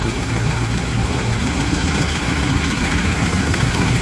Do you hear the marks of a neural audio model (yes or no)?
yes